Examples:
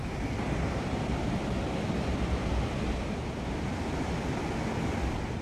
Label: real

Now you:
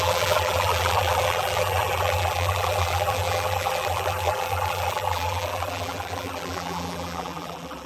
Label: fake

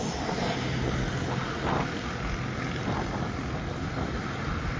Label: real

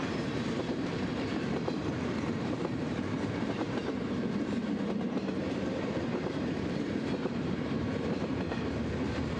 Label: fake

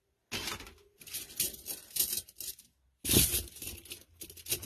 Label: real